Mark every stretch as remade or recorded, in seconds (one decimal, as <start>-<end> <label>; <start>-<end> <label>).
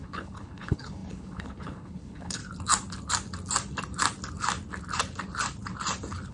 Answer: 0.0-2.4 remade; 2.4-6.3 recorded